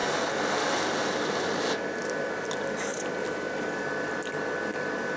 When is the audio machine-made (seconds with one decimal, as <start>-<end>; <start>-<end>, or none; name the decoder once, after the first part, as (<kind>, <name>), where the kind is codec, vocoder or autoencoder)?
none